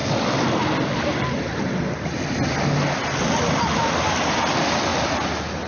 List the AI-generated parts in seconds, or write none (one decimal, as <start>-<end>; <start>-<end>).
none